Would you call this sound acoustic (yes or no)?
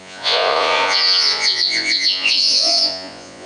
no